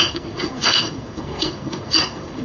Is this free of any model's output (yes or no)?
no